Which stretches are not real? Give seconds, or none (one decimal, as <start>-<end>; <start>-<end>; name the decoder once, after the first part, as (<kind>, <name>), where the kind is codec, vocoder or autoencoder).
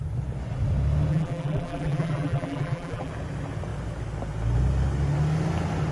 1.1-3.1 (vocoder, BigVGAN v2)